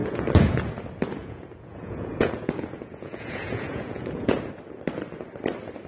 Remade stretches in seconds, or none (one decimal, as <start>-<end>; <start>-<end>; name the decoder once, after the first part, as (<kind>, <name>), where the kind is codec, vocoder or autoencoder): 0.0-0.7 (vocoder, Vocos); 1.2-4.5